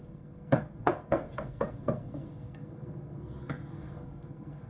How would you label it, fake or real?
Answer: fake